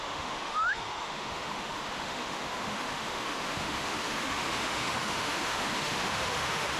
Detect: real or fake fake